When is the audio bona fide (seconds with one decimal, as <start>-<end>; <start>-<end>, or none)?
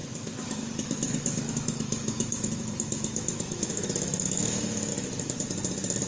4.9-6.1